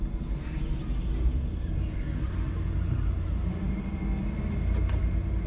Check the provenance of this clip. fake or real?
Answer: real